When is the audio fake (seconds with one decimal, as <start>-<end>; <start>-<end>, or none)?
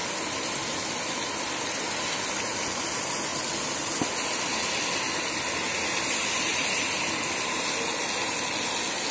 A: 6.5-7.1